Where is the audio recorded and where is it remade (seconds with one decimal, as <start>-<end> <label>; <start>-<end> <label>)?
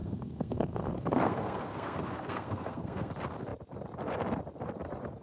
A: 0.0-3.1 remade; 3.1-5.2 recorded